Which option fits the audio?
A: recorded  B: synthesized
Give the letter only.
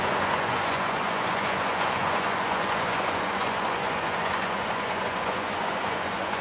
B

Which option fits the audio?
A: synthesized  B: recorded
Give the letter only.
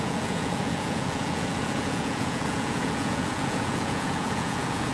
A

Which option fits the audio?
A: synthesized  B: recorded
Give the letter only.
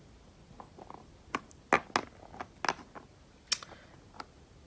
B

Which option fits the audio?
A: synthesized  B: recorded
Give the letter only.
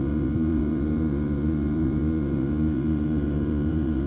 A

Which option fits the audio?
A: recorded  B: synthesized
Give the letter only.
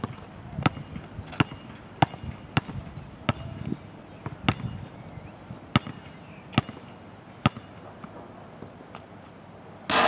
A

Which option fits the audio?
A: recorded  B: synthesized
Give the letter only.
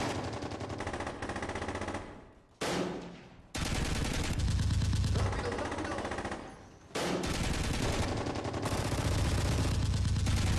A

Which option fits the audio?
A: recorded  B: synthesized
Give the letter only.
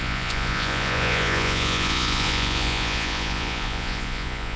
B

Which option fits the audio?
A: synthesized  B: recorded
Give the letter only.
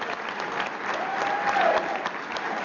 B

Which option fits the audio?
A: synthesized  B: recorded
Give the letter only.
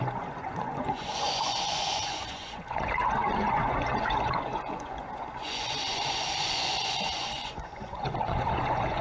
A